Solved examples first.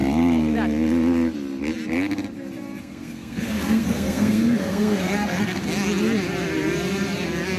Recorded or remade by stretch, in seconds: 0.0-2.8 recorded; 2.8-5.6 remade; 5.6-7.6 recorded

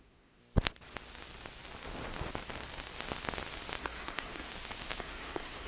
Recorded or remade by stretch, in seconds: 0.0-0.4 remade; 0.4-3.8 recorded; 3.8-4.5 remade; 4.5-5.0 recorded; 5.0-5.7 remade